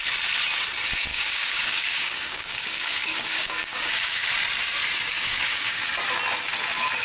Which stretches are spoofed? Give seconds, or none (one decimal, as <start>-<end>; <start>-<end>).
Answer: 1.1-4.3; 5.1-5.9